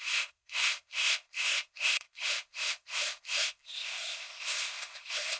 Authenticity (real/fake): fake